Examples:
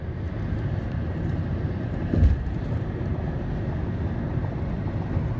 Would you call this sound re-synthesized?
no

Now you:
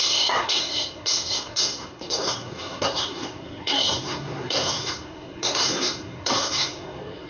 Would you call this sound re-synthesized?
yes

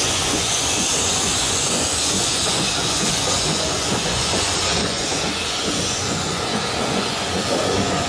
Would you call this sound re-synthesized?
yes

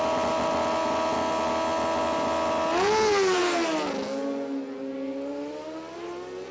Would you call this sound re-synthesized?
no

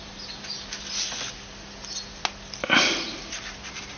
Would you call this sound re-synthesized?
no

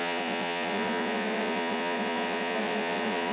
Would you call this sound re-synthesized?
yes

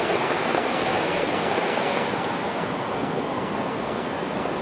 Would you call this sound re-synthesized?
yes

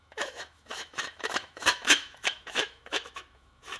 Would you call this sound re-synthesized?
yes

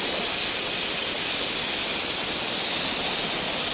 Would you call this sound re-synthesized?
no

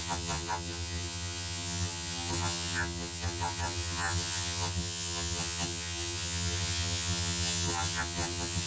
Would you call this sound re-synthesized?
yes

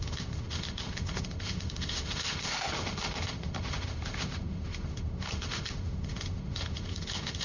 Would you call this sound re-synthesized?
yes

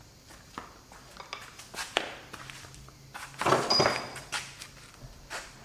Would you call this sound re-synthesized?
no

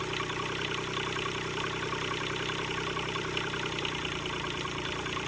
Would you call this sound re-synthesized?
no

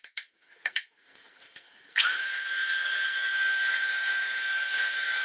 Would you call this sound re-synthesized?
yes